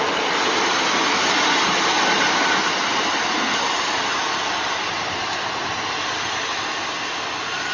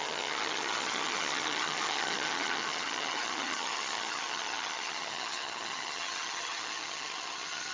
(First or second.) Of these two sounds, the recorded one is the first